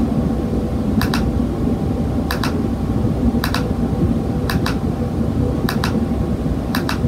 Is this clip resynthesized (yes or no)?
no